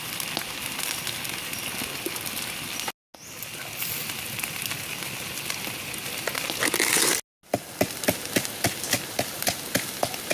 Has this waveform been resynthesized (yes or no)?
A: no